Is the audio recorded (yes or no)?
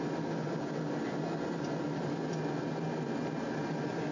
yes